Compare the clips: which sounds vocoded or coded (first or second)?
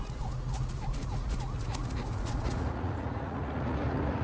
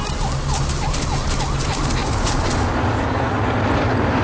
first